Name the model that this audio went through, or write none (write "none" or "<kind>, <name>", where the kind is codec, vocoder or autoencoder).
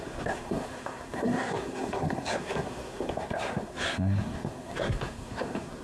codec, SNAC